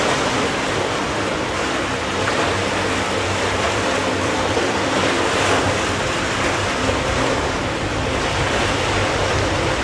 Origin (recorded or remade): remade